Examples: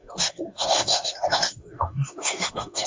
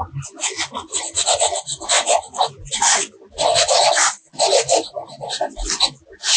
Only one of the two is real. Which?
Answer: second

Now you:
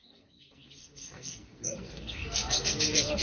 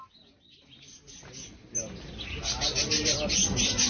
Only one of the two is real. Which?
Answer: second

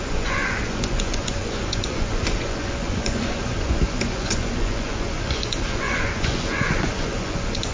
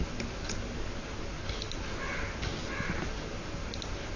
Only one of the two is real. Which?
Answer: second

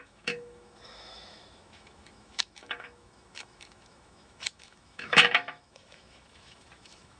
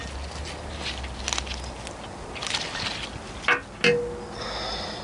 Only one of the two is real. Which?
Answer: second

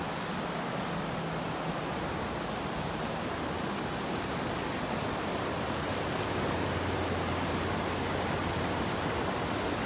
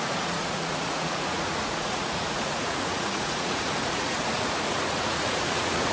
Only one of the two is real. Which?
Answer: first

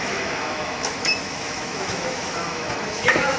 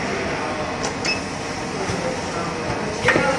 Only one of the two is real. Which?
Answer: second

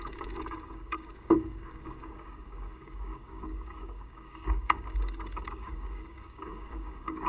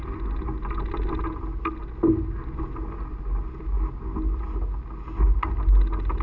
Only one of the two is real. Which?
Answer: second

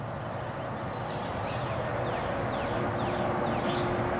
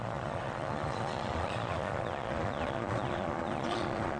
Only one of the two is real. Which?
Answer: first